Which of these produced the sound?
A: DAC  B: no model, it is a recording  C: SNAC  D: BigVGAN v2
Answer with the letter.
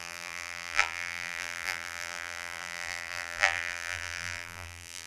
D